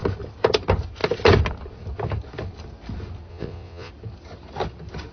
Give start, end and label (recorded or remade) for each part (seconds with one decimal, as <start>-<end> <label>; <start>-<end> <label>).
0.0-3.3 recorded; 3.3-3.9 remade; 3.9-5.1 recorded